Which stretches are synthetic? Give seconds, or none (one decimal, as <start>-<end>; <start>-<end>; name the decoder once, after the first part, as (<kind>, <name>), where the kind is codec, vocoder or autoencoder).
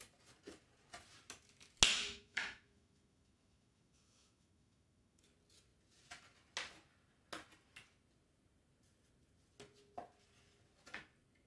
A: 1.9-5.2 (autoencoder, DAC-VAE)